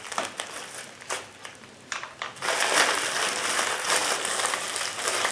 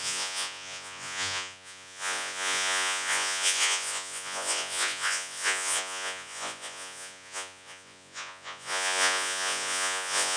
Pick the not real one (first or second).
second